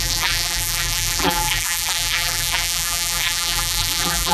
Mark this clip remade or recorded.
remade